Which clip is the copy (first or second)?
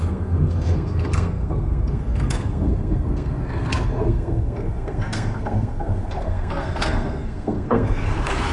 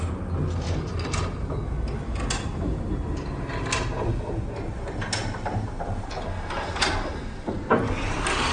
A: first